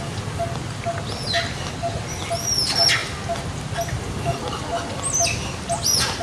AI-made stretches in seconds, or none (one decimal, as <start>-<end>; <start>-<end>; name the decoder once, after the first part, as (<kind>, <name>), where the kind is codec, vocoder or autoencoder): none